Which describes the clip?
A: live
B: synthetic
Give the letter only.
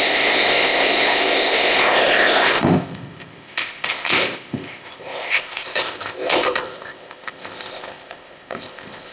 B